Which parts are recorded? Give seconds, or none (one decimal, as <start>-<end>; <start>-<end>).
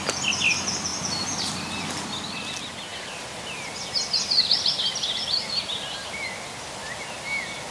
0.0-7.7